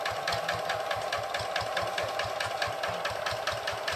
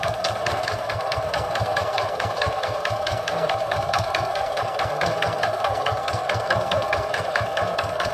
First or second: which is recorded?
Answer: first